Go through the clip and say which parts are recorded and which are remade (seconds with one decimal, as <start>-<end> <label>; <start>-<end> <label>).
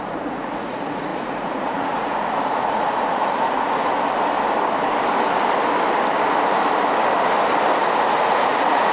0.0-3.8 remade; 3.8-8.1 recorded; 8.1-8.9 remade